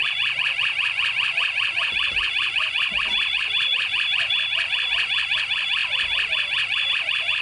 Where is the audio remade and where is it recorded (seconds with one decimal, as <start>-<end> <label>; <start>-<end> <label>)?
0.0-7.4 remade